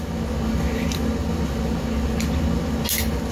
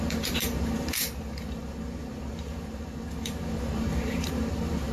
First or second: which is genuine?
first